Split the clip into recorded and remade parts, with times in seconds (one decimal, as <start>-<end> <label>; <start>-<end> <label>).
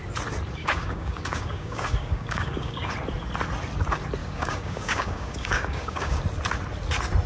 0.0-0.6 recorded; 0.6-2.9 remade; 2.9-4.2 recorded; 4.2-6.2 remade; 6.2-7.3 recorded